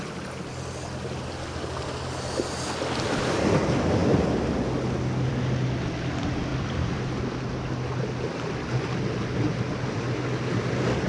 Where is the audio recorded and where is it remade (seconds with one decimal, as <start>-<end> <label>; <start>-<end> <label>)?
0.0-6.5 recorded; 6.5-7.2 remade; 7.2-11.1 recorded